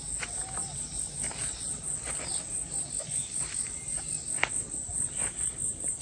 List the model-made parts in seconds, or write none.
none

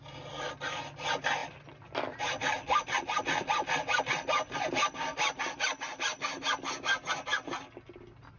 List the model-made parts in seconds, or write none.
none

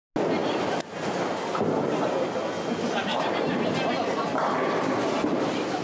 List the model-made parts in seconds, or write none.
none

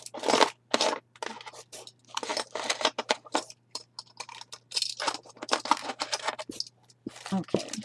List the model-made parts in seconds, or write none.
none

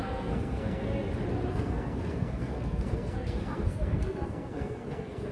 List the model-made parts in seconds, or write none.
0.0-0.9 (codec, SNAC); 1.5-5.3

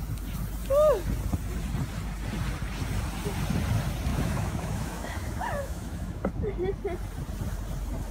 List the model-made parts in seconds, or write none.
4.1-6.3 (autoencoder, DAC-VAE)

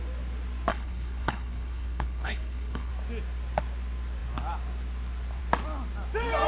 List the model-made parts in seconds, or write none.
0.7-2.9 (codec, HILCodec)